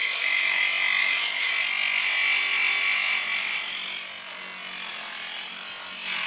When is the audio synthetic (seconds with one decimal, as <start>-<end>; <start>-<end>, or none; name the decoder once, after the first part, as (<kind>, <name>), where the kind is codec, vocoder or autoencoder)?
0.0-0.6 (autoencoder, DAC-VAE); 1.0-1.5